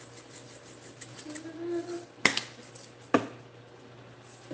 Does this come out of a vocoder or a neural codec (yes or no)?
no